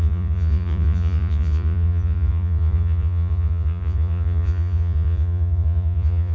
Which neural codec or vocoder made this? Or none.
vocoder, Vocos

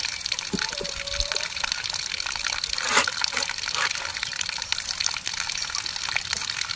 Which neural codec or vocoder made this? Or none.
none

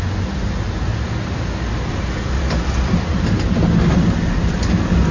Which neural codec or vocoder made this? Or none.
none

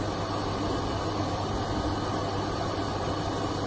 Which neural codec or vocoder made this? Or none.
none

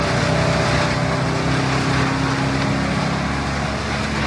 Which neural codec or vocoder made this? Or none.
none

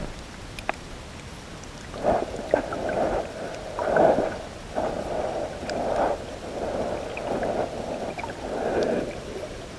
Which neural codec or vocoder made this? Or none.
none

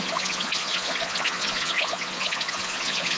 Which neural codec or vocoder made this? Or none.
vocoder, Vocos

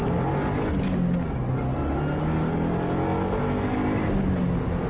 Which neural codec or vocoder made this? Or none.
none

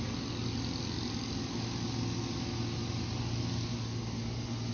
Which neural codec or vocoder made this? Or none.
none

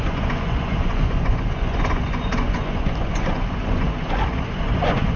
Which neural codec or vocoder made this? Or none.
vocoder, Vocos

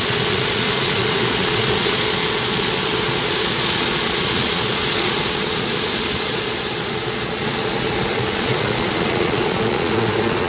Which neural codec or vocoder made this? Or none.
vocoder, Vocos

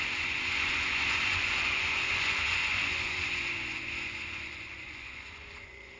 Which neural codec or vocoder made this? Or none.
vocoder, Vocos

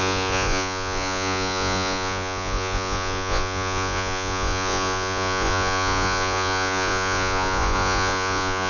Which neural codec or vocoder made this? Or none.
vocoder, Vocos